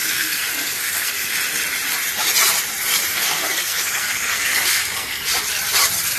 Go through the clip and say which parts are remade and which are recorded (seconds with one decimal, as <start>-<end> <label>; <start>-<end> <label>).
0.0-1.3 remade; 1.3-3.1 recorded; 3.1-5.2 remade; 5.2-6.2 recorded